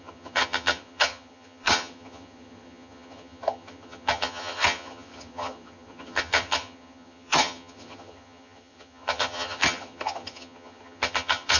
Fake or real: fake